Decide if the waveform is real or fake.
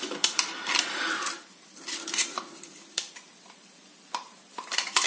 fake